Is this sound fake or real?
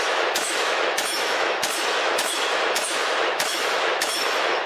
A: fake